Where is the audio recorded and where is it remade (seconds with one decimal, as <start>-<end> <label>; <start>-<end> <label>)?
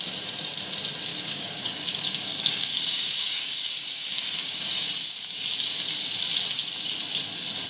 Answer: 0.0-1.1 recorded; 1.1-4.9 remade; 4.9-7.7 recorded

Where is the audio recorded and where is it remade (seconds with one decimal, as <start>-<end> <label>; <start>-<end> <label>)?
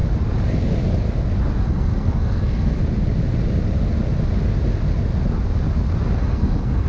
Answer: 0.0-1.6 recorded; 1.6-2.8 remade; 2.8-6.2 recorded; 6.2-6.9 remade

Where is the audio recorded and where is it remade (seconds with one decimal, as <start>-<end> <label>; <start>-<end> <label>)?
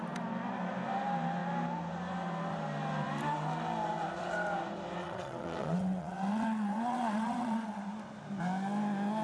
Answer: 0.0-5.0 recorded; 5.0-7.8 remade; 7.8-9.2 recorded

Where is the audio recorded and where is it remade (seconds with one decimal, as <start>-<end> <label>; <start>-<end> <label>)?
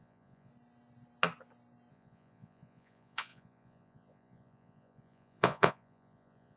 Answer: 0.0-0.5 remade; 0.5-1.9 recorded; 1.9-6.6 remade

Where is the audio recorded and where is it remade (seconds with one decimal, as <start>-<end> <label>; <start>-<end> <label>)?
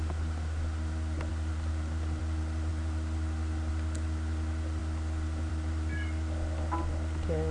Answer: 0.0-7.5 recorded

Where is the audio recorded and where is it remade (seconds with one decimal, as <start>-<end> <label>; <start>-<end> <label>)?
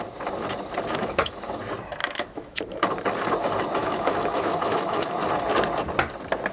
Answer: 0.0-1.0 recorded; 1.0-1.6 remade; 1.6-2.0 recorded; 2.0-2.6 remade; 2.6-3.8 recorded; 3.8-5.2 remade; 5.2-6.5 recorded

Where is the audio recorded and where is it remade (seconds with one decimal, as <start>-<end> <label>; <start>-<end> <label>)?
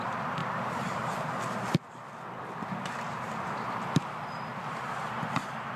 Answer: 0.0-0.4 remade; 0.4-3.5 recorded; 3.5-4.5 remade; 4.5-5.1 recorded; 5.1-5.8 remade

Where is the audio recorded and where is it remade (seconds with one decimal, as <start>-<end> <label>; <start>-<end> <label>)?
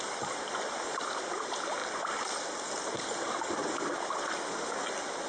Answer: 0.0-5.3 recorded